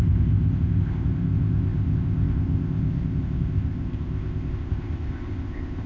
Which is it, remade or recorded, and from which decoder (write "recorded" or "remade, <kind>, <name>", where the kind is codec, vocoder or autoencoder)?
remade, codec, ZipCodec